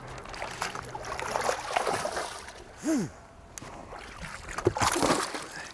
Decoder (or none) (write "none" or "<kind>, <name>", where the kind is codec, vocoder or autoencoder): none